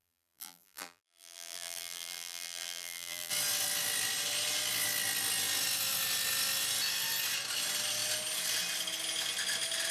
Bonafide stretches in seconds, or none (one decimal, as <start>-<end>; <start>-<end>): 3.3-9.9